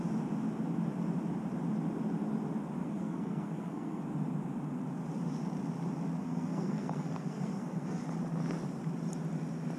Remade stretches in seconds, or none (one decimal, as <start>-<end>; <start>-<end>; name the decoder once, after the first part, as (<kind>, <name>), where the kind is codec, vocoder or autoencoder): 2.8-4.0 (codec, SNAC); 6.2-8.0